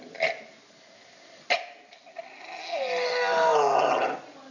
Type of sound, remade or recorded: recorded